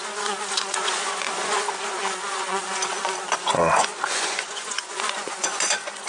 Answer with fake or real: fake